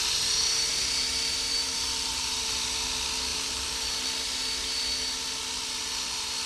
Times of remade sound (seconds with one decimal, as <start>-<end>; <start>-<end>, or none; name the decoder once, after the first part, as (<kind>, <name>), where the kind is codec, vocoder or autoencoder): 0.7-2.5 (vocoder, BigVGAN v2); 3.3-4.0